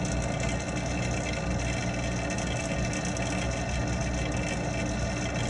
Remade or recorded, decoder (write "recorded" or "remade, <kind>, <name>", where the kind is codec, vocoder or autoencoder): recorded